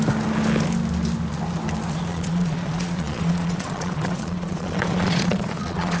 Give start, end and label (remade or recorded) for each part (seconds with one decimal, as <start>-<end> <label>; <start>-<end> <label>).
0.0-2.1 recorded; 2.1-6.0 remade

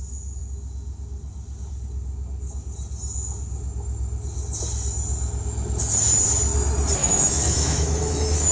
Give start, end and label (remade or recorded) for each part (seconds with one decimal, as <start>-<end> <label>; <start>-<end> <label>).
0.0-7.0 recorded; 7.0-8.5 remade

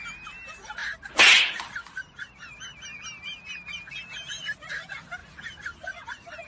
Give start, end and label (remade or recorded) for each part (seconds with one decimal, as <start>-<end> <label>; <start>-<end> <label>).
0.0-6.5 recorded

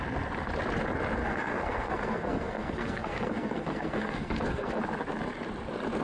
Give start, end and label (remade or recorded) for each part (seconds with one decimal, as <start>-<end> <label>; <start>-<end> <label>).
0.0-1.2 recorded; 1.2-4.8 remade; 4.8-6.0 recorded

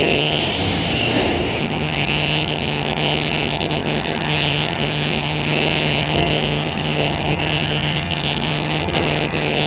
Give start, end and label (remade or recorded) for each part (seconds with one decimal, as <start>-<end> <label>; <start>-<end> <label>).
0.0-0.4 remade; 0.4-1.6 recorded; 1.6-9.7 remade